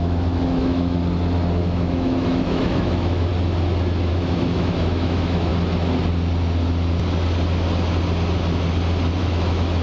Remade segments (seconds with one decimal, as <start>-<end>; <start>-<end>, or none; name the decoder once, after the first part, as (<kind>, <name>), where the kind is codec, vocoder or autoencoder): 0.0-1.0 (autoencoder, DAC-VAE); 1.6-3.3; 4.1-5.5; 9.2-9.8